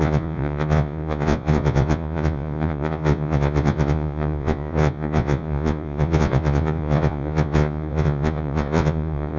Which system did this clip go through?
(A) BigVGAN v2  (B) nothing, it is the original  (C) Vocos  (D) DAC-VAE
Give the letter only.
C